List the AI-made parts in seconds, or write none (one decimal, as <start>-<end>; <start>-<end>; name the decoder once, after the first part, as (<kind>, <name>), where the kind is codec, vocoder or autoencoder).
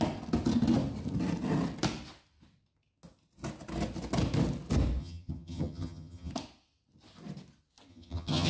5.0-6.3 (vocoder, HiFi-GAN); 7.9-8.5